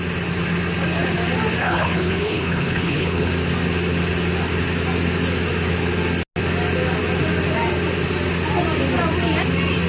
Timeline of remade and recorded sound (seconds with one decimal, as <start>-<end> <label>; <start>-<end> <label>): 0.0-1.6 recorded; 1.6-3.3 remade; 3.3-9.9 recorded